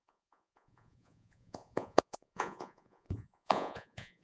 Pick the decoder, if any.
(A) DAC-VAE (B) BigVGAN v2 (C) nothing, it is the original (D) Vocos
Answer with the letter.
D